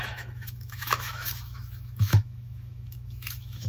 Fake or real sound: fake